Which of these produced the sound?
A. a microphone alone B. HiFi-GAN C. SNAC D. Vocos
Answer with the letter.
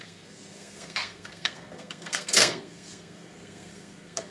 C